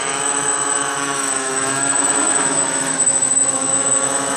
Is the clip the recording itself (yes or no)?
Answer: no